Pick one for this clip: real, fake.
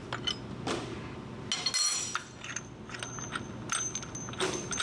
real